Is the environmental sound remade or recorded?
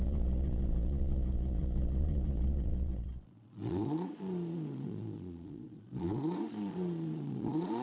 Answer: remade